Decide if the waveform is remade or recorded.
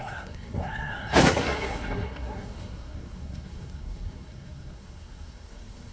remade